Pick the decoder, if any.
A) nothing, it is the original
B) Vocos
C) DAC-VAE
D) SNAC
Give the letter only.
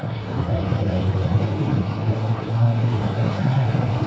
D